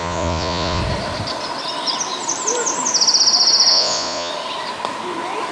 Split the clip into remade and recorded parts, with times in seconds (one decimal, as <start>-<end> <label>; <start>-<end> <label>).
0.0-0.8 remade; 0.8-3.7 recorded; 3.7-4.3 remade; 4.3-5.5 recorded